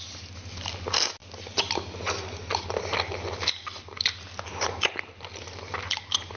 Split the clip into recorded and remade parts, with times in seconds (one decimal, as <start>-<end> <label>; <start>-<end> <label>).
0.0-6.4 recorded